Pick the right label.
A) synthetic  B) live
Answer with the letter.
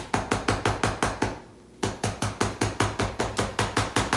B